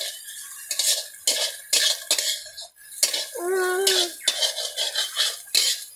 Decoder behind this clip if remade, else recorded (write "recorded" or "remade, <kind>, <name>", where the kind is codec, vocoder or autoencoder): recorded